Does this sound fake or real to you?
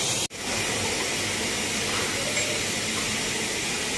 real